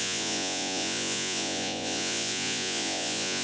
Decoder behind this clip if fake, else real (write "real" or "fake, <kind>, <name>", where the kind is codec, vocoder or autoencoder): fake, vocoder, Vocos